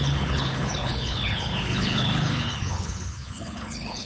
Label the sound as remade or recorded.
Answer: remade